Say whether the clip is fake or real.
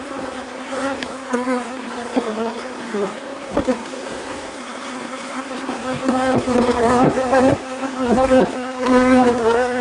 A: fake